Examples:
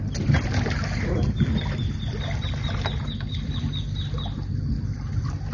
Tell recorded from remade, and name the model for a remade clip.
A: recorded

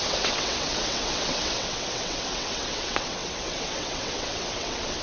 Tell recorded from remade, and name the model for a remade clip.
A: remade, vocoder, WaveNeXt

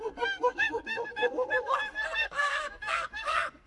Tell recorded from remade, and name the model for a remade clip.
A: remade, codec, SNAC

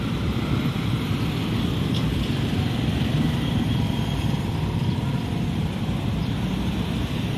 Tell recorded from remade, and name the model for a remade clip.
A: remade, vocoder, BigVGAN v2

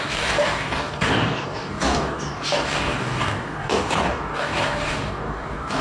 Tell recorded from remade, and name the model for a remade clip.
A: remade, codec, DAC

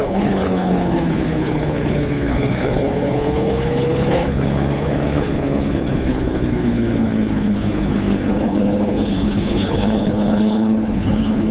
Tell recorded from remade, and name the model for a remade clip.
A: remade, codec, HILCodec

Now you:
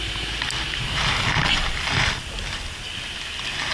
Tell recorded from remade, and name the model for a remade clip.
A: recorded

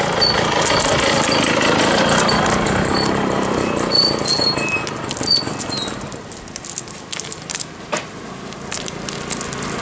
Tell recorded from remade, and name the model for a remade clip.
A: recorded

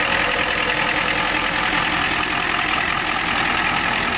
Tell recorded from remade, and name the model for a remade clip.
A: recorded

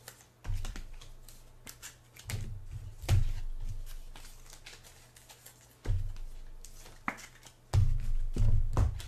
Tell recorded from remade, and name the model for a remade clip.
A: recorded